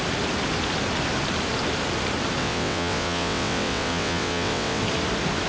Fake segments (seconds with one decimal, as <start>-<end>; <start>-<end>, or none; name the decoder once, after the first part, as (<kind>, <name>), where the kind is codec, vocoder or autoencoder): 2.4-4.8 (vocoder, WaveNeXt)

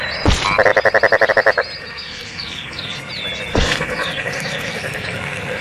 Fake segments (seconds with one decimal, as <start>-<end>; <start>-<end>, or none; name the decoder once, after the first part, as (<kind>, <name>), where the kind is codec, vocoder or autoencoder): 1.8-3.1 (codec, SNAC); 3.5-5.6

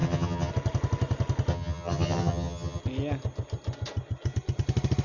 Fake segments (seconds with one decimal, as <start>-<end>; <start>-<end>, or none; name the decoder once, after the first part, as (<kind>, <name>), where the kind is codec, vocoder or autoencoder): 0.0-0.5 (vocoder, HiFi-GAN); 1.5-2.8

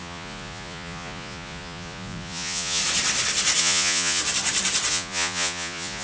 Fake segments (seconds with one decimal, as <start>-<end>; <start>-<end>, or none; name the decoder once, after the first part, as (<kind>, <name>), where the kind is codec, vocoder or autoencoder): 0.0-2.8 (vocoder, Vocos); 3.6-4.2; 4.9-6.0

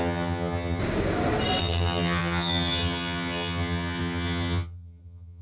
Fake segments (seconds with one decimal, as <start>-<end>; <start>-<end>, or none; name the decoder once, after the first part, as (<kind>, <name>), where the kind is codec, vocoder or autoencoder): 0.0-0.8 (vocoder, HiFi-GAN); 1.6-5.4

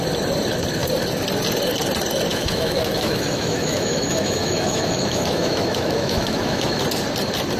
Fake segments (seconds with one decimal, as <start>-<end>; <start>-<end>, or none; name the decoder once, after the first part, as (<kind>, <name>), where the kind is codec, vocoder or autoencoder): 2.3-6.8 (autoencoder, DAC-VAE)

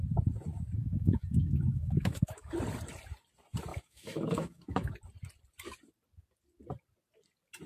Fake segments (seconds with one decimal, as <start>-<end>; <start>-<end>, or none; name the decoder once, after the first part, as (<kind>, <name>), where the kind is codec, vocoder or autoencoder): 0.8-2.5 (autoencoder, DAC-VAE); 3.7-4.9